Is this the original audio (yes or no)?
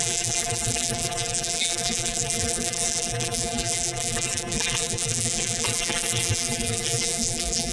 no